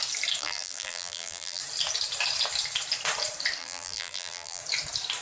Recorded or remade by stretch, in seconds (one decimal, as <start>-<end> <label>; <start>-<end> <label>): 0.0-0.4 recorded; 0.4-1.6 remade; 1.6-3.6 recorded; 3.6-4.6 remade; 4.6-5.2 recorded